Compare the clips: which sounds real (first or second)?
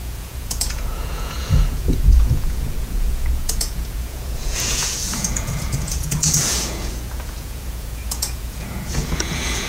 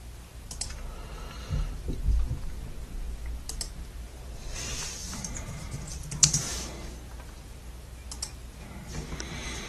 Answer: second